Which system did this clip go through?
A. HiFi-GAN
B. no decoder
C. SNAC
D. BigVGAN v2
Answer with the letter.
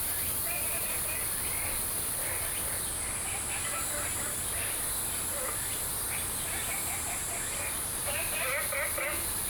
B